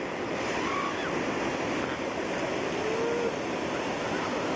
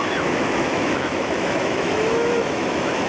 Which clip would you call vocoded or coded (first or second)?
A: second